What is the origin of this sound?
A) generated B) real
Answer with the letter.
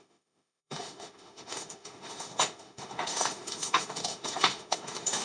A